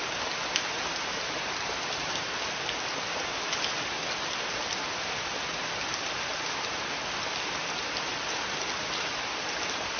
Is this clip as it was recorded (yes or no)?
yes